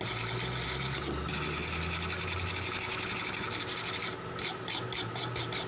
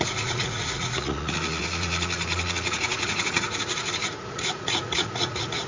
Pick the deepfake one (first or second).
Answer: second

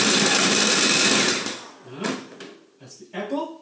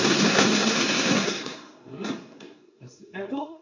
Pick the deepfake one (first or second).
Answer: second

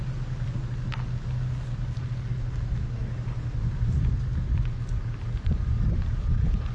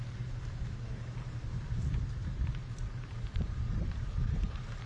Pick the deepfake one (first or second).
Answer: second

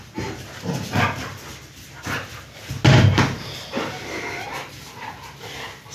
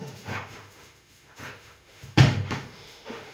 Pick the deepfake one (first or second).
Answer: second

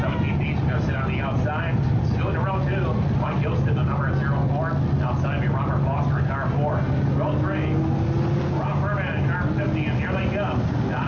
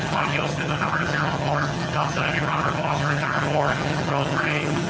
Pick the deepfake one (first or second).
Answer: second